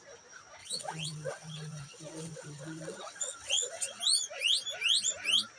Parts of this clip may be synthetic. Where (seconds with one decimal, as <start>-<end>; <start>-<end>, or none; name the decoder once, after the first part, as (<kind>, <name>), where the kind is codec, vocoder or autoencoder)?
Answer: 0.6-4.0 (vocoder, WaveNeXt)